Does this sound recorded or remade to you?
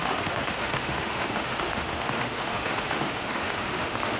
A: remade